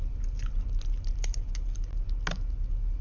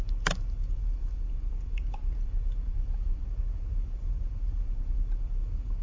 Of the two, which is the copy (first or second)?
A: second